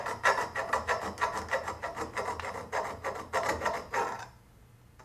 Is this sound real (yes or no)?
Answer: yes